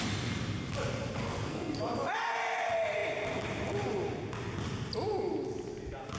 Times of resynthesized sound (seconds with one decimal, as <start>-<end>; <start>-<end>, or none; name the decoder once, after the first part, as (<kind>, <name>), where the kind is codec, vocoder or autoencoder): 1.2-1.8 (codec, SNAC)